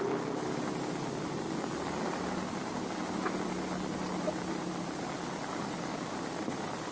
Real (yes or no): yes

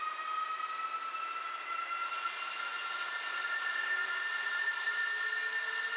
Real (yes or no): yes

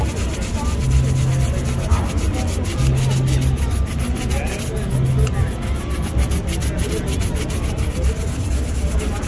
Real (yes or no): yes